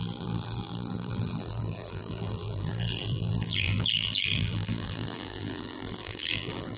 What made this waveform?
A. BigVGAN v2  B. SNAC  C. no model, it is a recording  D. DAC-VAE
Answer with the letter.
A